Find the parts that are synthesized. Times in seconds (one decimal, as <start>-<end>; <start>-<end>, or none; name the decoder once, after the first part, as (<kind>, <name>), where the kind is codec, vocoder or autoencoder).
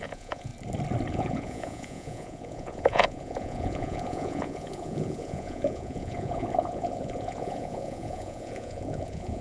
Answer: 0.0-0.5 (vocoder, Vocos); 1.1-9.4